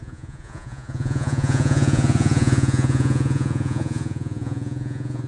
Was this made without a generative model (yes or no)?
no